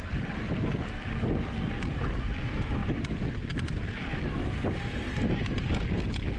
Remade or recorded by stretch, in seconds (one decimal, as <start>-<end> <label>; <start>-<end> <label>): 0.0-6.4 recorded